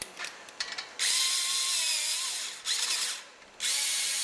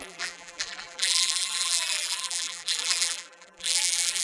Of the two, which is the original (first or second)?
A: first